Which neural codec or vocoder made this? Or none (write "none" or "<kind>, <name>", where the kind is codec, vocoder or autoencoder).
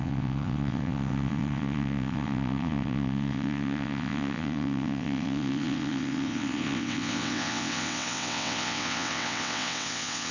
vocoder, WaveNeXt